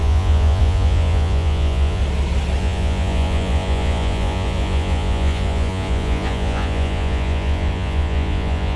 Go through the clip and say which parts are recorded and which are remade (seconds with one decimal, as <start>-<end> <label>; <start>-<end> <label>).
0.0-2.0 remade; 2.0-2.6 recorded; 2.6-8.8 remade